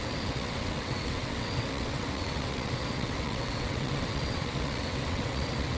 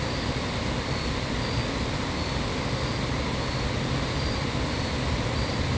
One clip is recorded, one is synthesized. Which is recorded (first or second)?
second